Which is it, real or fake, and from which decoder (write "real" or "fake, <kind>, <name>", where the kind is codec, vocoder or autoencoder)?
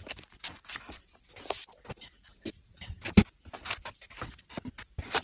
real